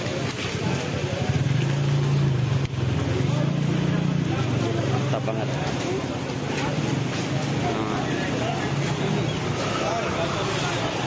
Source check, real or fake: real